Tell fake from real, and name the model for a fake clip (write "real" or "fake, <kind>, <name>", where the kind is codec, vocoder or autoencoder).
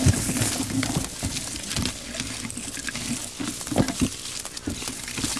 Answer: real